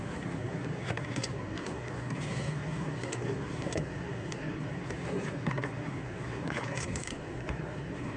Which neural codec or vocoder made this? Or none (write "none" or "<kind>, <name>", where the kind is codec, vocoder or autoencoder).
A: codec, SNAC